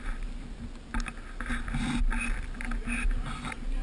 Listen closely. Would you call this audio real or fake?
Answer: real